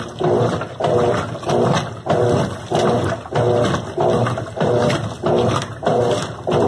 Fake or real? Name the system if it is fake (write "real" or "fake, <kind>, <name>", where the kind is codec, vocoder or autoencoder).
real